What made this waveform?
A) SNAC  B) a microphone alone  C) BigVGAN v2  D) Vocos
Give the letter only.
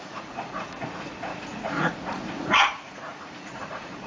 D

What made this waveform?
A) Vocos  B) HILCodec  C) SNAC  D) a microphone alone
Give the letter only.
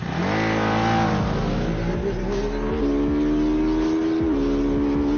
D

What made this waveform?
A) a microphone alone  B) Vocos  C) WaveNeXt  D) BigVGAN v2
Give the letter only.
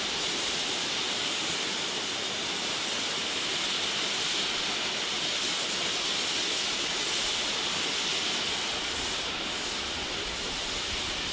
A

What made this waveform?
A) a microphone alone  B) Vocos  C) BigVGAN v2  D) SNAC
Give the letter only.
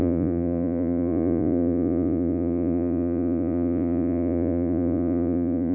B